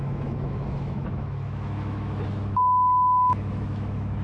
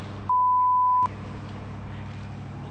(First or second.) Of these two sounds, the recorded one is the second